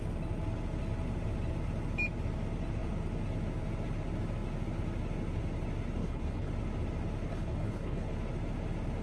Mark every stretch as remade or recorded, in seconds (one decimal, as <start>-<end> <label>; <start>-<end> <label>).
0.0-6.0 recorded; 6.0-6.5 remade; 6.5-7.3 recorded; 7.3-8.1 remade; 8.1-9.0 recorded